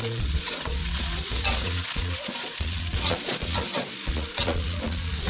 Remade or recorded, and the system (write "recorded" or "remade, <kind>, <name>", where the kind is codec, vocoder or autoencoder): remade, vocoder, Vocos